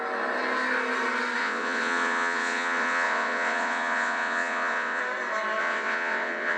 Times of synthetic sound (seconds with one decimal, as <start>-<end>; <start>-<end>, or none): 1.4-5.0; 5.6-6.6